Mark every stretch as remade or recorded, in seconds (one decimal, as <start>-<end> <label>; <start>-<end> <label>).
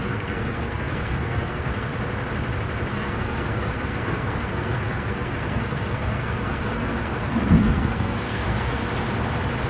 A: 0.0-1.9 remade; 1.9-2.9 recorded; 2.9-8.8 remade; 8.8-9.7 recorded